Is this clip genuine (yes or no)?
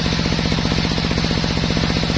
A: yes